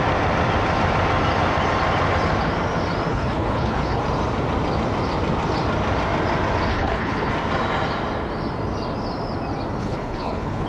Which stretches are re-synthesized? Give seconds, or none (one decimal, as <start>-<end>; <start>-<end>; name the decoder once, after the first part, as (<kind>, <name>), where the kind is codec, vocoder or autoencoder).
3.1-4.0 (codec, HILCodec); 6.7-7.3; 9.8-10.7

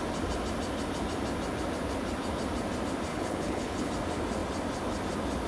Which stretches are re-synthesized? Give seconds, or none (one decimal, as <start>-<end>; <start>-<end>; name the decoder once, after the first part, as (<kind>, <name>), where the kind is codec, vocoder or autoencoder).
3.1-3.9 (codec, HILCodec)

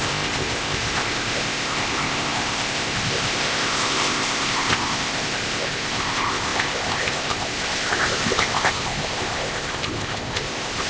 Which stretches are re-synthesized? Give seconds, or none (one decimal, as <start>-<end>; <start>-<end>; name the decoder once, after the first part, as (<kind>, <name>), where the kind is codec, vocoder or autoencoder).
0.0-10.9 (codec, ZipCodec)

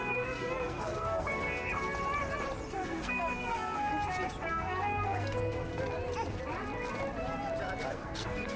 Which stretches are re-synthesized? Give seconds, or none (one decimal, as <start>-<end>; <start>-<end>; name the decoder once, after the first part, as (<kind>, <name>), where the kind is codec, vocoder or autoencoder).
0.0-1.7 (codec, SNAC); 2.7-3.9; 4.5-5.7; 7.9-8.6